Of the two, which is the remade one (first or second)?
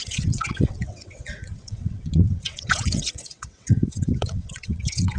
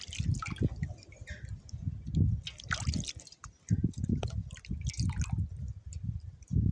first